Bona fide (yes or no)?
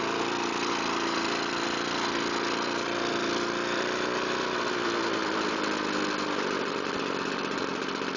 no